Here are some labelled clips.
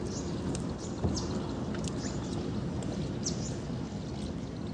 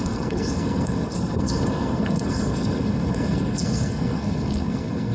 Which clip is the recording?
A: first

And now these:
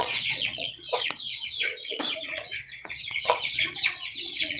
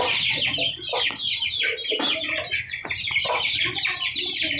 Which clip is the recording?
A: second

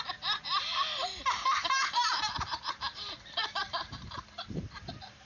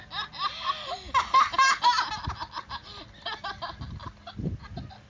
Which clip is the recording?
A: second